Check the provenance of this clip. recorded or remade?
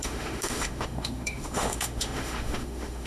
remade